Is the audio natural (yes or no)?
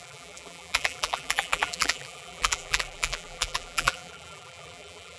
no